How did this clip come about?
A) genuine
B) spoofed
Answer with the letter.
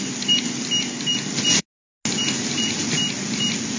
A